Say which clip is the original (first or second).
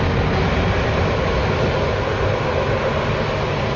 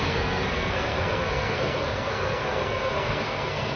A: first